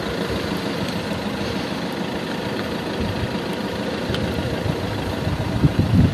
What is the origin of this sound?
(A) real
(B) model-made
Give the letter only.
A